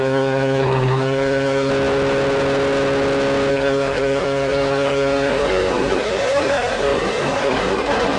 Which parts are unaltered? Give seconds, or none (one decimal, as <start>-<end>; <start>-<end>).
1.7-3.5